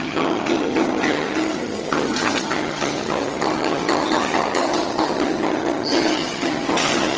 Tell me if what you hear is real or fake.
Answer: fake